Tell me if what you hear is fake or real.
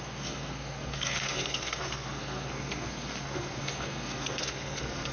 fake